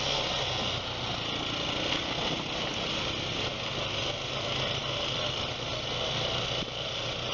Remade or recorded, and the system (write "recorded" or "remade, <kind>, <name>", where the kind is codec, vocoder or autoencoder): recorded